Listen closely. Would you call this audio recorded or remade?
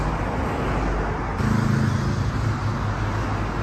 recorded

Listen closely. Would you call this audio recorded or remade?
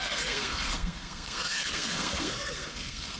remade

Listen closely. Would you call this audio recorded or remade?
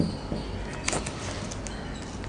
recorded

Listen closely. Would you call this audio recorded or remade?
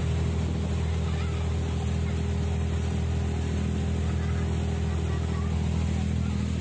recorded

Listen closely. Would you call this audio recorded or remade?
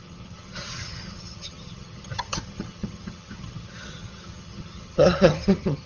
remade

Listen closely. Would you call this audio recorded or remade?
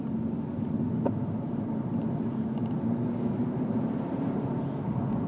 recorded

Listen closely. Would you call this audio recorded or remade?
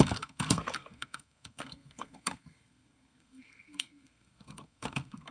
remade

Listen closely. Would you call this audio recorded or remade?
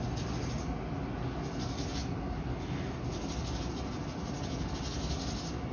recorded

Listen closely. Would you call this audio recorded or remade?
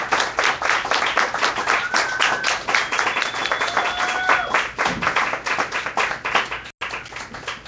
recorded